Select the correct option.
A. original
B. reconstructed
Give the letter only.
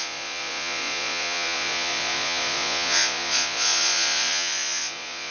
B